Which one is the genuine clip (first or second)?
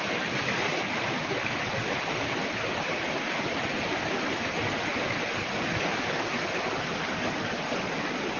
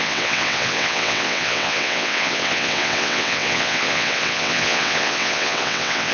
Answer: first